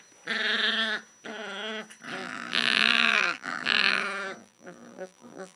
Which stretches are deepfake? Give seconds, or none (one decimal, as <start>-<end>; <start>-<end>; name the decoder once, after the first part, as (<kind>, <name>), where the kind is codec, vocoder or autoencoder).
2.2-4.0 (vocoder, BigVGAN v2); 4.4-5.6